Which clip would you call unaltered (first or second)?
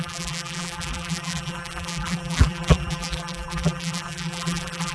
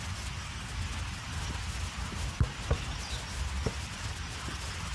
second